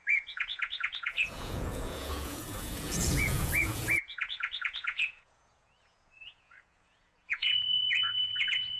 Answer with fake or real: fake